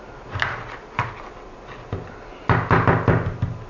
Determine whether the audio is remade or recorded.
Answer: recorded